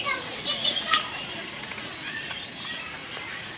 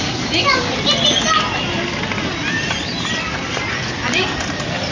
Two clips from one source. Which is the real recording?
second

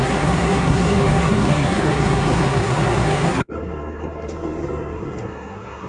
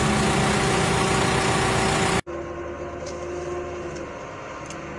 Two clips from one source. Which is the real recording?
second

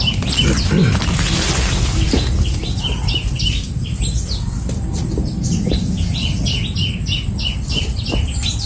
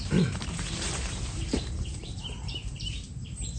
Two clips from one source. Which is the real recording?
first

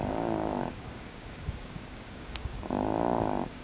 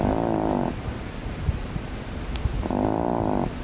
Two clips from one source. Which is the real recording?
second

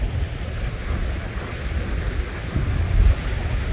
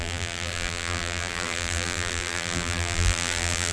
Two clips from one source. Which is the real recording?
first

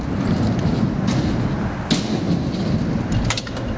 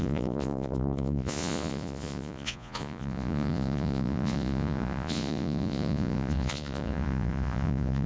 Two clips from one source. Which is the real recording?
first